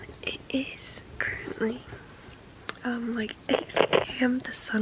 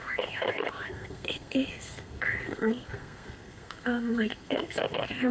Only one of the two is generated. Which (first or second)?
second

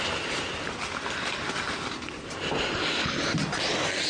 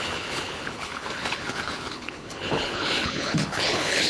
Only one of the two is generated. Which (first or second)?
second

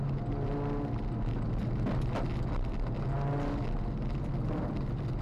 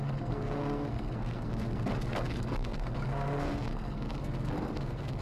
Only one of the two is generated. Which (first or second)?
second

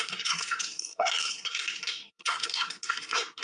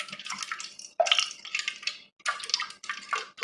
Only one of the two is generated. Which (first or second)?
first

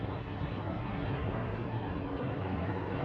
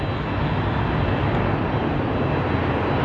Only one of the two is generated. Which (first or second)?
first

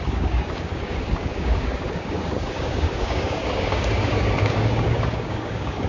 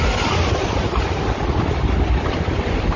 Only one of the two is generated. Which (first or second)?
first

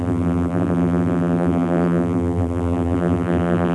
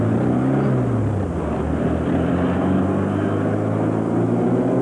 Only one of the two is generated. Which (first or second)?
first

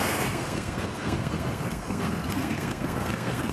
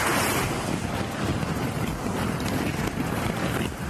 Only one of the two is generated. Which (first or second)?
first